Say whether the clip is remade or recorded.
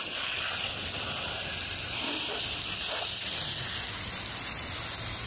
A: recorded